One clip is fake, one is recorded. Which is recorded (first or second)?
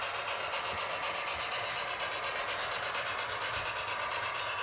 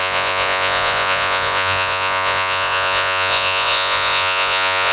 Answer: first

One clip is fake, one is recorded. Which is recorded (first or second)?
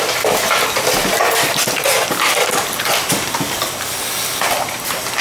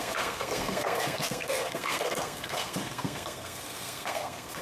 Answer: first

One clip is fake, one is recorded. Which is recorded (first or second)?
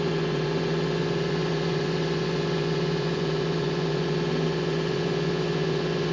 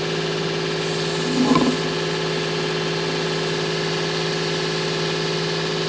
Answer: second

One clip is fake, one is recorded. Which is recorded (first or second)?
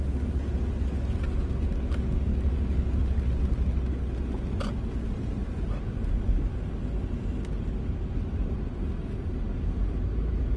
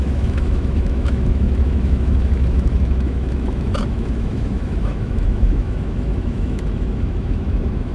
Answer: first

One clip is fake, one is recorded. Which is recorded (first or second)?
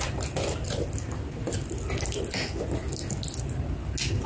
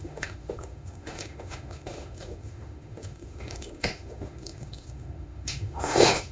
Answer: first